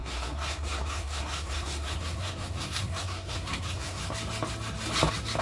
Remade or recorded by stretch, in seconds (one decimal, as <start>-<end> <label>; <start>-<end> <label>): 0.0-4.0 remade; 4.0-5.4 recorded